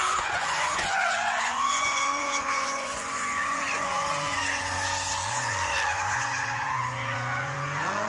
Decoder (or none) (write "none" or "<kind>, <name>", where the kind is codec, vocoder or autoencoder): vocoder, Vocos